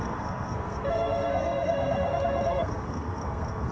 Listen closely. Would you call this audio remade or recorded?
remade